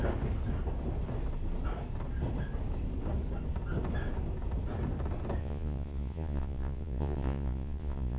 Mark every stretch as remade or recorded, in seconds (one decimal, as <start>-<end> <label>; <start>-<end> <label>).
0.0-5.4 recorded; 5.4-8.2 remade